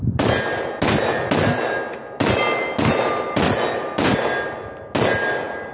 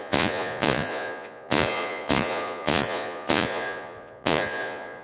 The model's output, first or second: second